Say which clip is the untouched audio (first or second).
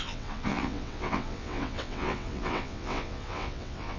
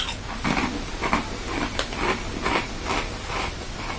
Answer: second